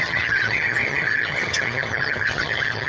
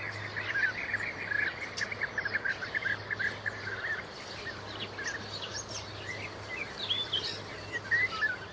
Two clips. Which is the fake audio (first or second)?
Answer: first